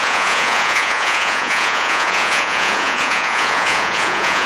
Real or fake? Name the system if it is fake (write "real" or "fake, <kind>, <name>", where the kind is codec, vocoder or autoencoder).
fake, vocoder, Vocos